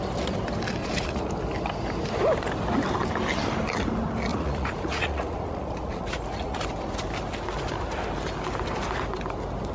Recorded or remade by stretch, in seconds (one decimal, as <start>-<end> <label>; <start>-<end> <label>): 0.0-0.8 recorded; 0.8-1.3 remade; 1.3-4.3 recorded; 4.3-6.6 remade; 6.6-9.7 recorded